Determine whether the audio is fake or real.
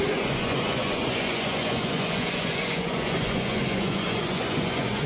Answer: fake